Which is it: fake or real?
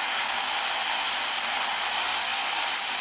real